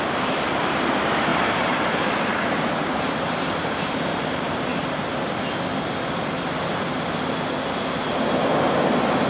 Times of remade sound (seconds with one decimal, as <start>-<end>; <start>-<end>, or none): 0.0-4.7; 8.1-9.3